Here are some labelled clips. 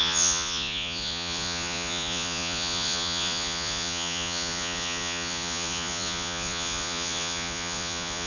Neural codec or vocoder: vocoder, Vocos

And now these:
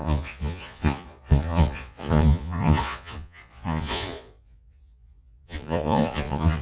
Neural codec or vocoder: vocoder, Vocos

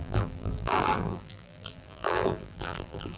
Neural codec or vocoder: vocoder, BigVGAN v2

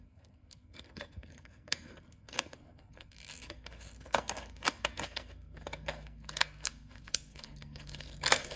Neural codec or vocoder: codec, SNAC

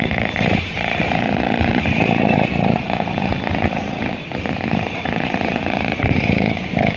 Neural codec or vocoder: vocoder, Vocos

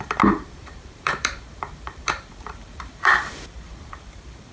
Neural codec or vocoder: vocoder, BigVGAN v2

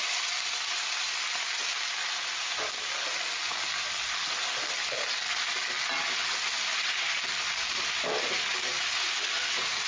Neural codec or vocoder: none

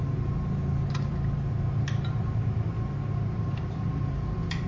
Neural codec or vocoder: none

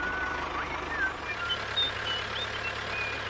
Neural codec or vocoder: none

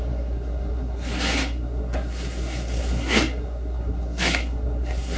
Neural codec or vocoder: codec, SNAC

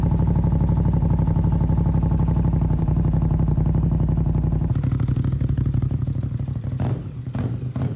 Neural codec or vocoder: vocoder, BigVGAN v2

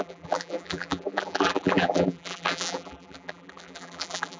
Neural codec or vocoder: vocoder, BigVGAN v2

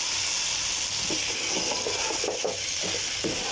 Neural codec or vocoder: none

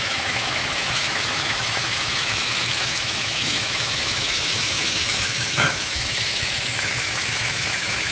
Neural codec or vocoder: autoencoder, DAC-VAE